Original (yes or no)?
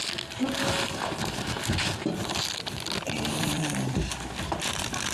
yes